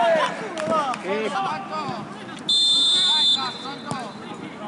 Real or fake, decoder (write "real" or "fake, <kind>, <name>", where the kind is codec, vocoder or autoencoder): real